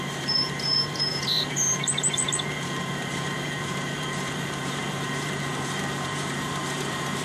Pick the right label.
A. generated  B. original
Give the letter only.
A